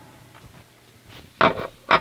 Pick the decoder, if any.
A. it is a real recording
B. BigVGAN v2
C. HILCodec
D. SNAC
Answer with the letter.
A